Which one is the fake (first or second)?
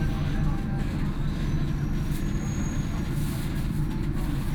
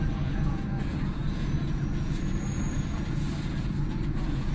second